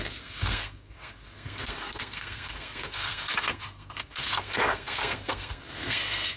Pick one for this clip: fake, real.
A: fake